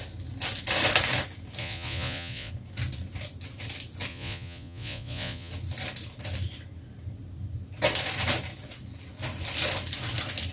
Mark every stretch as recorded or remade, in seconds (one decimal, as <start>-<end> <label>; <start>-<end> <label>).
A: 0.0-1.6 recorded; 1.6-2.5 remade; 2.5-4.1 recorded; 4.1-5.5 remade; 5.5-10.5 recorded